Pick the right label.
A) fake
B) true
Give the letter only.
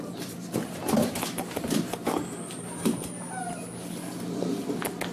B